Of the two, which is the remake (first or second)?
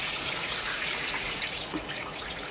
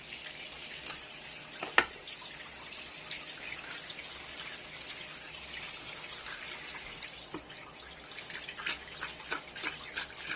first